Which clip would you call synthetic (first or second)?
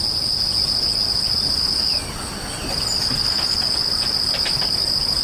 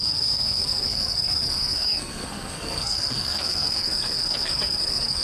second